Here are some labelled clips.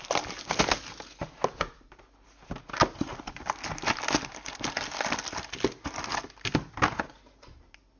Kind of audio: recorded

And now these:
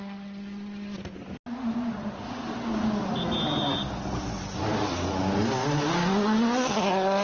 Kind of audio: recorded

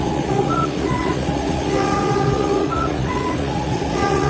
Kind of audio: remade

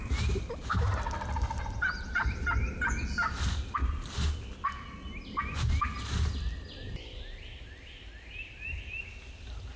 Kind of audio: recorded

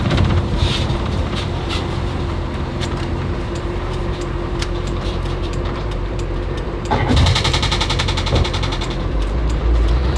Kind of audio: remade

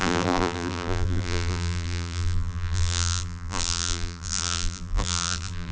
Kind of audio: remade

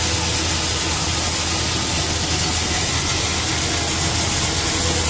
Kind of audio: recorded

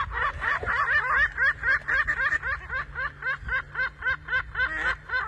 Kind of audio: recorded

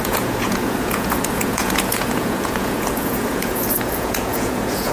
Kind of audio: remade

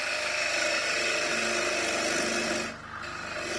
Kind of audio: recorded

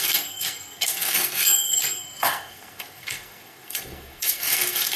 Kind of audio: remade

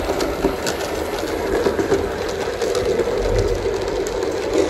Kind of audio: recorded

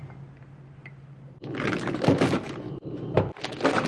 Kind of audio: recorded